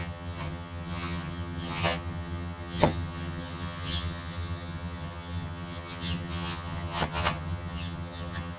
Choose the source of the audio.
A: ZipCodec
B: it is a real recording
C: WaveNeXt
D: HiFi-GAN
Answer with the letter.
D